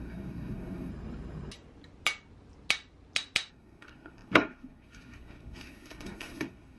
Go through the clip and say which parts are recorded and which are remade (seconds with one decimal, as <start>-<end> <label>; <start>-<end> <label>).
0.0-0.9 remade; 0.9-3.5 recorded; 3.5-6.8 remade